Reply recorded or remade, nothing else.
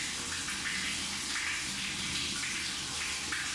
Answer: recorded